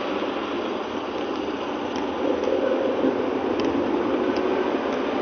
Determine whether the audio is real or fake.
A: real